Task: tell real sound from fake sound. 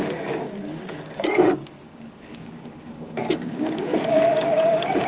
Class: fake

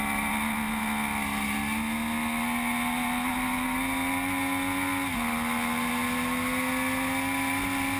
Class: real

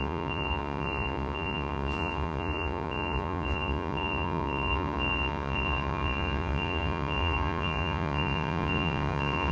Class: fake